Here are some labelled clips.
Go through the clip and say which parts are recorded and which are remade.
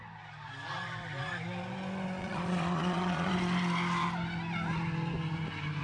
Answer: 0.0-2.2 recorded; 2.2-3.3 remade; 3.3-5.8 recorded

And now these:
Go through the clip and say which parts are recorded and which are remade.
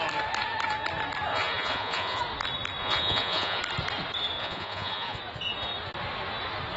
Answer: 0.0-1.3 recorded; 1.3-2.2 remade; 2.2-2.8 recorded; 2.8-3.6 remade; 3.6-4.4 recorded; 4.4-5.2 remade; 5.2-6.8 recorded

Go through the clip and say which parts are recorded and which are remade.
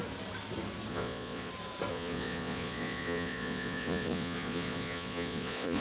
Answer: 0.0-0.9 recorded; 0.9-1.5 remade; 1.5-1.9 recorded; 1.9-5.8 remade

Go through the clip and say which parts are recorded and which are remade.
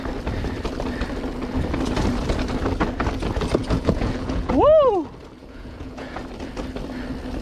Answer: 0.0-3.6 recorded; 3.6-4.5 remade; 4.5-5.4 recorded; 5.4-6.2 remade; 6.2-7.4 recorded